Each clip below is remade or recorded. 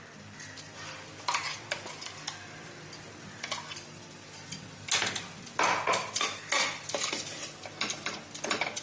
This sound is recorded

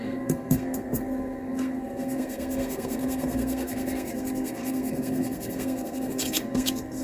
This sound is remade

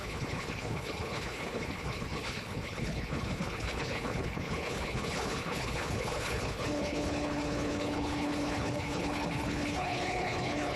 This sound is remade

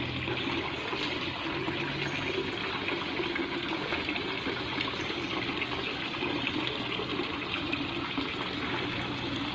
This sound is recorded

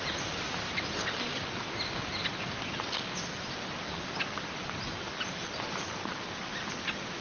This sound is recorded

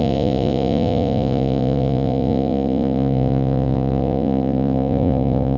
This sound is remade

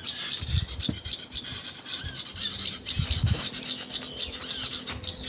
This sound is recorded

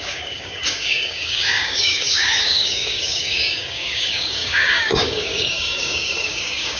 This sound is remade